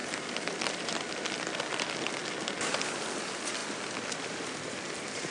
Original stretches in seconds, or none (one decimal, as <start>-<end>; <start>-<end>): 3.2-3.6